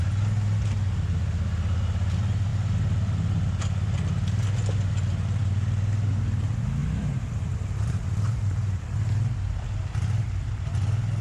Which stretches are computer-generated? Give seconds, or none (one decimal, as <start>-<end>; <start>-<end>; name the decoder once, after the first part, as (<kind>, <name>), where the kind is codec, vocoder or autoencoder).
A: 6.8-8.9 (vocoder, BigVGAN v2)